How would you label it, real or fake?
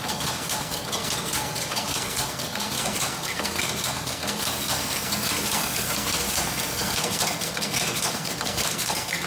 fake